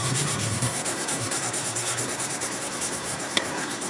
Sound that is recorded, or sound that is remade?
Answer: remade